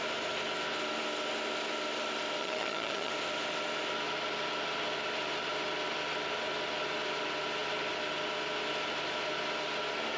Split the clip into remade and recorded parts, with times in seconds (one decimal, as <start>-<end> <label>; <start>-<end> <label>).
0.0-2.4 recorded; 2.4-3.1 remade; 3.1-10.2 recorded